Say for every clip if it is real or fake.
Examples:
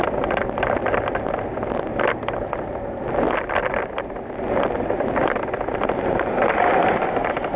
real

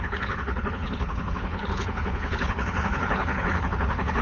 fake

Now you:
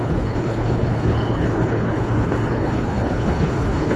fake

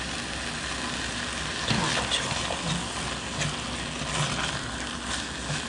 real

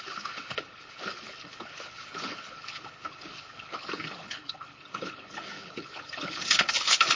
fake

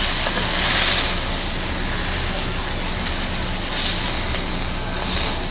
real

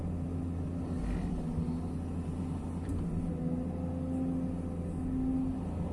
real